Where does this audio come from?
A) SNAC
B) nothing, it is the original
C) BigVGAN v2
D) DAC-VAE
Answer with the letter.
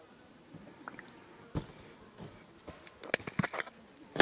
B